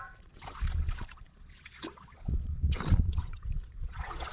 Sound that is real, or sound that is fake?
fake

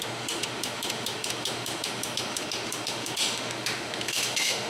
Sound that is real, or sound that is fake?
fake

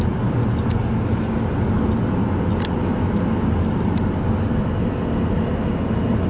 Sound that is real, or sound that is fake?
real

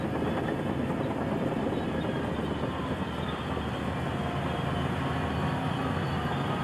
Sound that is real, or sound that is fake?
real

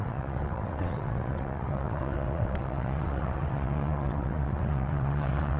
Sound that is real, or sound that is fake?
fake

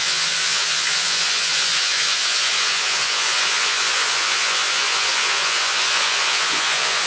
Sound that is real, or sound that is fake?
fake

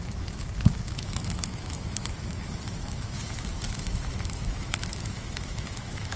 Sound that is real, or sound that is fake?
fake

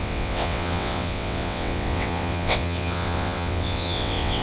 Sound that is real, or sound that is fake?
fake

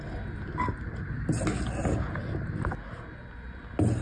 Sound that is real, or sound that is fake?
real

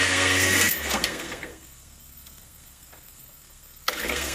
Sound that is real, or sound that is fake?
fake